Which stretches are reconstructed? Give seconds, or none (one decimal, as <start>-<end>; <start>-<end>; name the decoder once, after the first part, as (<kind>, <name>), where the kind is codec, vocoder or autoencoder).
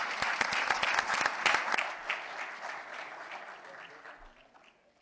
none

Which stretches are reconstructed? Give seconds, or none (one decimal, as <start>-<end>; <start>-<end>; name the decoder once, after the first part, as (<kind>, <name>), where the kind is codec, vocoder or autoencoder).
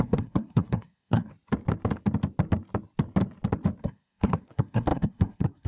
0.0-1.3 (codec, SNAC); 3.8-5.7